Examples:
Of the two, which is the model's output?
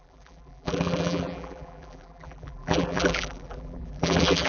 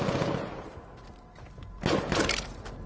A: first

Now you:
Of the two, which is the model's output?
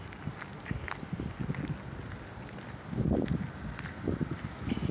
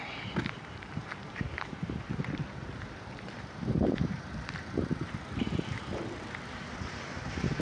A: second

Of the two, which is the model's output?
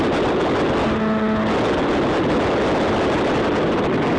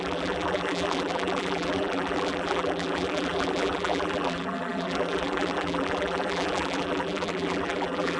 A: second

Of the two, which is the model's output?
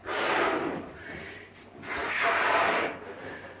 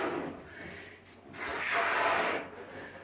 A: first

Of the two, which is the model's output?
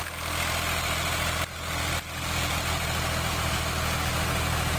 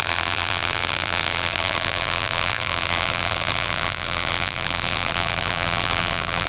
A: second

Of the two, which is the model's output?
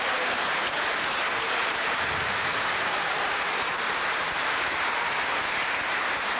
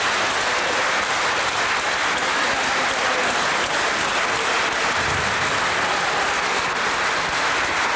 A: first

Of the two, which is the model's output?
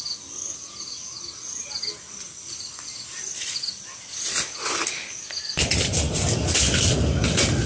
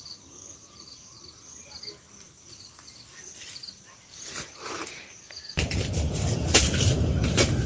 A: second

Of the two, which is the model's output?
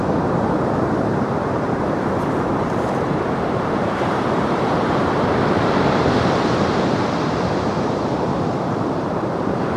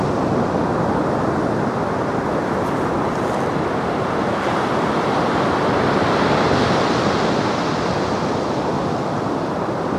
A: first